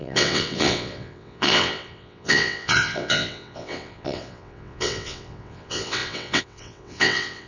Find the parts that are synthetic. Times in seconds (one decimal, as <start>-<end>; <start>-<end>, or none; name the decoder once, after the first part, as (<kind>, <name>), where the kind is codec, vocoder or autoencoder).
0.0-7.5 (vocoder, WaveNeXt)